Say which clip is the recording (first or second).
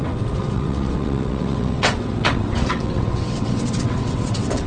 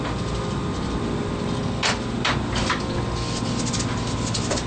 second